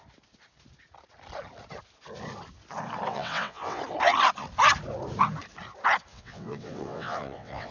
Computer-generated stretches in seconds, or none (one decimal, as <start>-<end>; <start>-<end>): 3.1-3.8; 6.1-7.7